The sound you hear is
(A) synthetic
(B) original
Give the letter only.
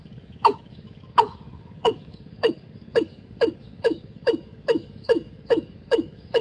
A